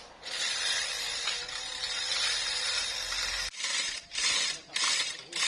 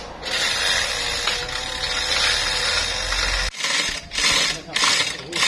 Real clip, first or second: second